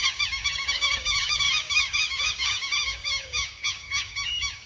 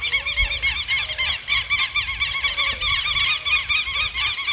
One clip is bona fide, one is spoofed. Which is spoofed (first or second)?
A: first